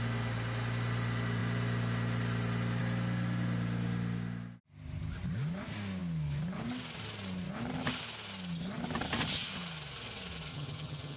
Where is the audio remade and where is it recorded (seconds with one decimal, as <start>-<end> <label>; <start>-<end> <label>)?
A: 0.0-10.5 recorded; 10.5-11.2 remade